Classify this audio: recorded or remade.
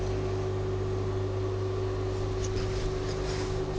recorded